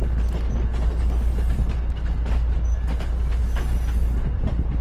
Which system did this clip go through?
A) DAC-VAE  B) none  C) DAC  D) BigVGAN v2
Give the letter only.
B